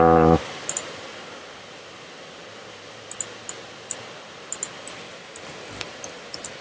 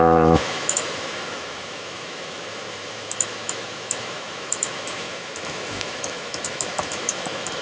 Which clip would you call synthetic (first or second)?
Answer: second